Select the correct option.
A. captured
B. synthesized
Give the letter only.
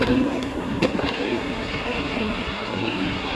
B